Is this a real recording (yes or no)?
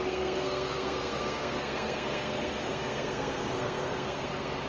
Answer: no